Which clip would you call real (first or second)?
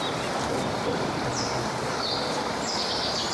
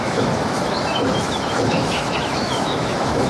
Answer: first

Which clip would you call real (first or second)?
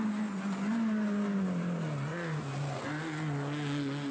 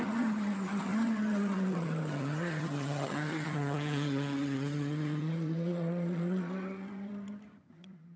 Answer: first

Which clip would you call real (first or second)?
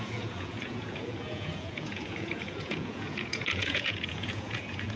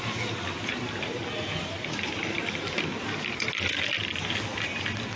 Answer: second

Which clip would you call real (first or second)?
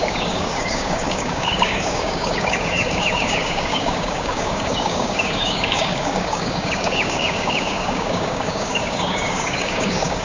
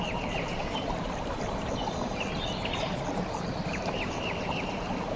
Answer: second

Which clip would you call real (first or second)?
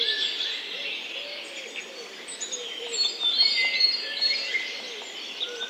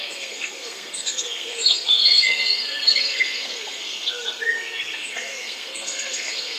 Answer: first